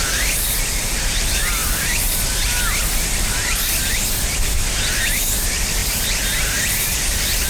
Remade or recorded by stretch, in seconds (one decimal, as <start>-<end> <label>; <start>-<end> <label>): 0.0-7.5 recorded